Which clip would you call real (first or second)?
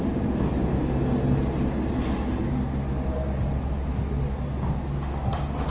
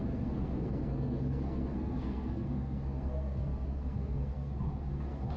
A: first